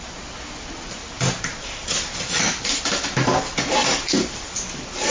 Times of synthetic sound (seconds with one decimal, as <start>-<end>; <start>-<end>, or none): 1.0-2.8; 3.8-5.1